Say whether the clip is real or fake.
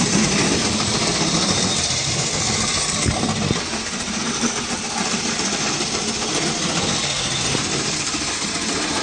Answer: fake